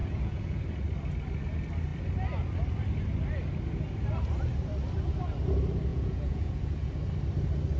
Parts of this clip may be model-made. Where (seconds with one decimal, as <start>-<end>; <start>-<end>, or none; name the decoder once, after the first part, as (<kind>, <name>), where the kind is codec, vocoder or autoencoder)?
0.0-0.6 (vocoder, Vocos); 5.9-6.9